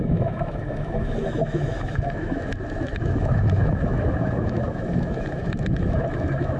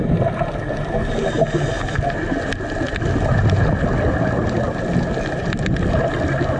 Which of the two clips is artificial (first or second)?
first